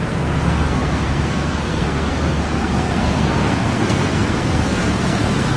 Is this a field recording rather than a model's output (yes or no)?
no